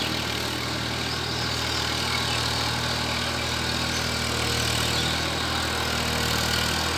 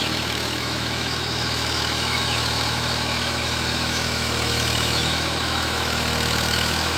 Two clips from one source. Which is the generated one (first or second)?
second